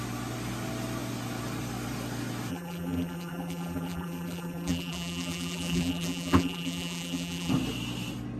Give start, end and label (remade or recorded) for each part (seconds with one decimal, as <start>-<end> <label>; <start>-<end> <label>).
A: 0.0-2.5 recorded; 2.5-7.5 remade; 7.5-8.4 recorded